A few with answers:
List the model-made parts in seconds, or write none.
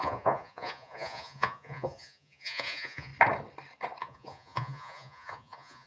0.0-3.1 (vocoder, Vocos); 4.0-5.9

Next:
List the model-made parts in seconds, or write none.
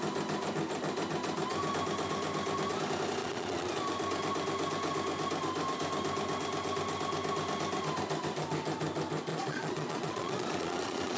3.2-3.7 (vocoder, Vocos); 9.3-11.2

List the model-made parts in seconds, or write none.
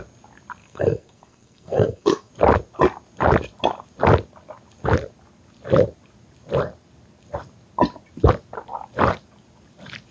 0.6-2.3 (codec, SNAC)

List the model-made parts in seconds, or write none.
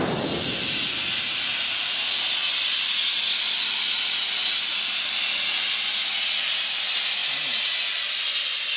none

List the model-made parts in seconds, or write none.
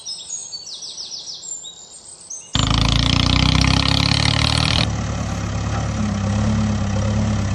none